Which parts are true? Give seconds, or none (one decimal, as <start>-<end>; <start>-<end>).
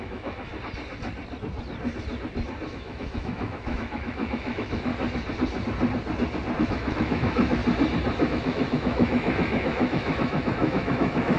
0.5-2.7; 4.9-6.6; 7.6-8.3